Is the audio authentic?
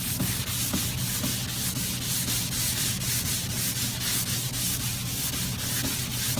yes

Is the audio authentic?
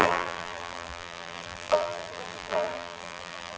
no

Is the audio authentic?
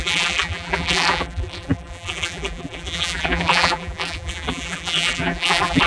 no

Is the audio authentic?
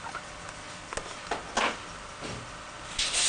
yes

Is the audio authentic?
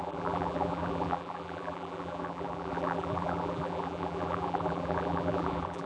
no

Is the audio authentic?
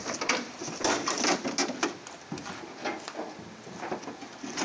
yes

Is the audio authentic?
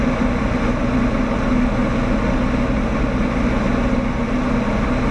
yes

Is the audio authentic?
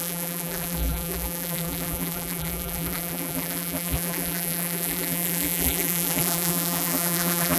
no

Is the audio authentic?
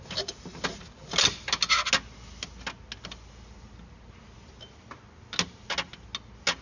yes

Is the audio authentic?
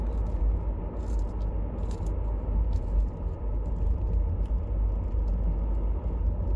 yes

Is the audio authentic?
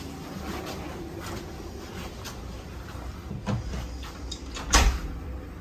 yes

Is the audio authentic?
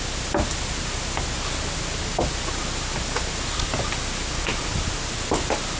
yes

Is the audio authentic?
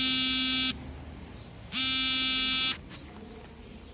yes